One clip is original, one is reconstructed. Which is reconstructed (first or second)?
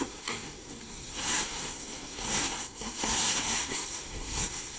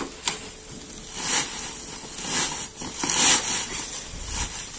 first